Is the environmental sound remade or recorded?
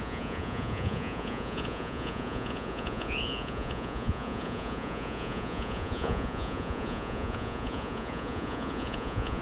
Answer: remade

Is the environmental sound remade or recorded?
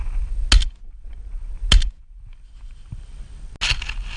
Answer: recorded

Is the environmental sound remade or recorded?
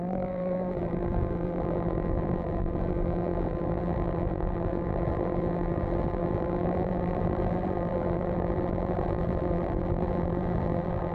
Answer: remade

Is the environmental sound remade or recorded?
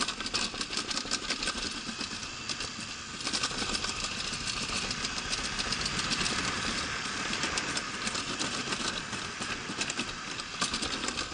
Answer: recorded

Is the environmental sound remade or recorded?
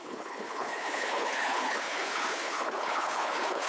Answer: remade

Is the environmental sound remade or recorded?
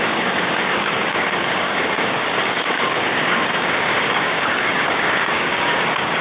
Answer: remade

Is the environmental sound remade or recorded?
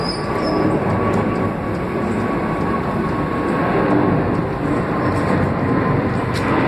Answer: recorded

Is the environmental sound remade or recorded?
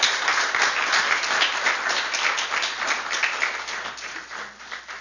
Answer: recorded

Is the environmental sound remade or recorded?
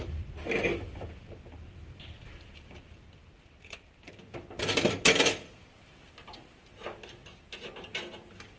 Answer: recorded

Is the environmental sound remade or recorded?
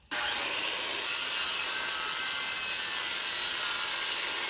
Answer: recorded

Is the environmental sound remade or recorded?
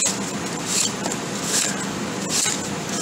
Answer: recorded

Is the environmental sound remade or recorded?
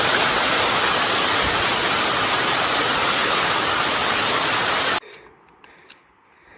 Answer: recorded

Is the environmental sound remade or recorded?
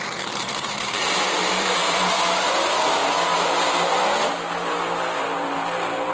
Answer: remade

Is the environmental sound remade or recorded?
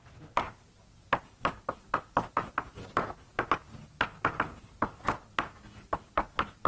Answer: recorded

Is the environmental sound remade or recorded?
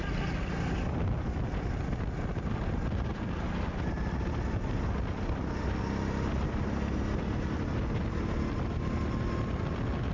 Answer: recorded